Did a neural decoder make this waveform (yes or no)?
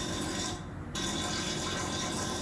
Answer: yes